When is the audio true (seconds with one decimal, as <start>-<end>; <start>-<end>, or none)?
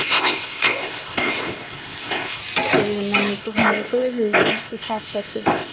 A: 2.4-3.4